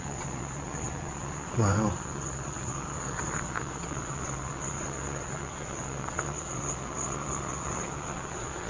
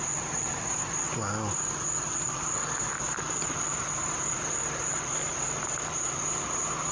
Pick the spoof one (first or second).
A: first